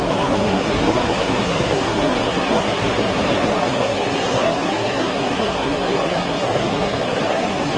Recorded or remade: remade